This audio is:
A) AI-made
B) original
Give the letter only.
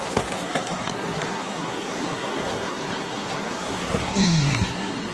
A